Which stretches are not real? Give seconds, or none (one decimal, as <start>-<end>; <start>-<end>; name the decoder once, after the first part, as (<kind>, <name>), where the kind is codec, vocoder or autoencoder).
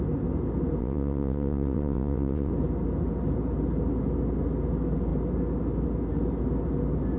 0.8-2.5 (vocoder, WaveNeXt)